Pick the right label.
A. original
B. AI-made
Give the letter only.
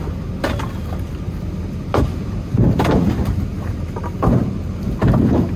A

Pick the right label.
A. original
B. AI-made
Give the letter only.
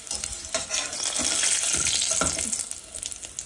A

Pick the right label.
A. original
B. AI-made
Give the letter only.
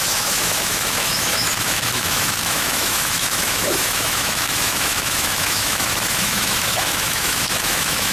B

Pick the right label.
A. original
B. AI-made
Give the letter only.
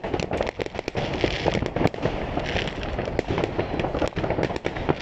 A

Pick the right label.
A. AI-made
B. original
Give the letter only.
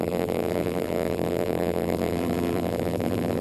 A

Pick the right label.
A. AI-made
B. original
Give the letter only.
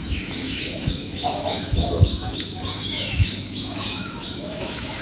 A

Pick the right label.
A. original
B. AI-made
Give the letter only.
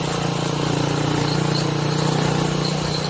A